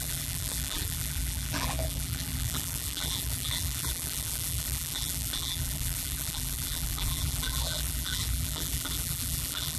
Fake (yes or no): yes